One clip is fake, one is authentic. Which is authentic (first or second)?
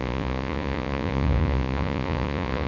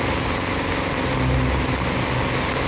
second